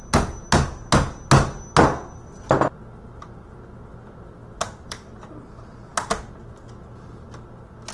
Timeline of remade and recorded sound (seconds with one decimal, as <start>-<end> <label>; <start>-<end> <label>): 0.0-4.4 recorded; 4.4-5.3 remade; 5.3-7.9 recorded